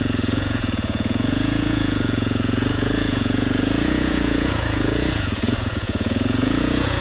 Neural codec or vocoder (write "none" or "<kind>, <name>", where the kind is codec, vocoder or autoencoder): vocoder, Vocos